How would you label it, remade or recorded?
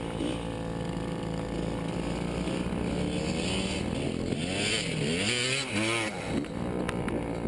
recorded